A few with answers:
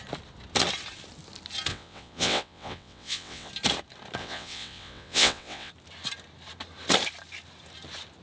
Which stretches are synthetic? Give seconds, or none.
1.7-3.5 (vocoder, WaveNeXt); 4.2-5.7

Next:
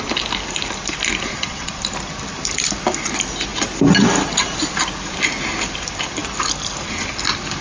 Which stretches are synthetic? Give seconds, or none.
1.3-1.8 (vocoder, WaveNeXt)

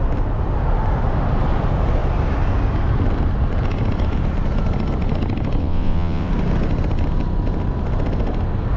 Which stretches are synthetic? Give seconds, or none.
5.6-6.3 (vocoder, WaveNeXt)